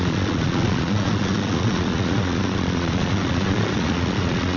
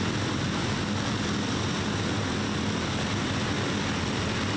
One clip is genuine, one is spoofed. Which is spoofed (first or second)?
first